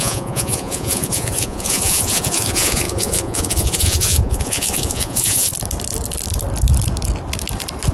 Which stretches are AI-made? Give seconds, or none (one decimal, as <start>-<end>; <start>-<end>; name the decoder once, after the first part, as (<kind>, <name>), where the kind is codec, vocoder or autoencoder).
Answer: 0.0-5.5 (vocoder, Vocos)